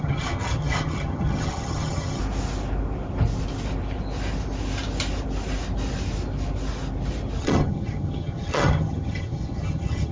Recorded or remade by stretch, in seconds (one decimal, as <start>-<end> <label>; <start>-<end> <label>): 0.0-2.2 remade; 2.2-7.4 recorded; 7.4-10.1 remade